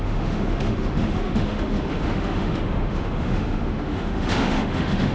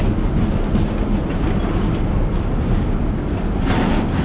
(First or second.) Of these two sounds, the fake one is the first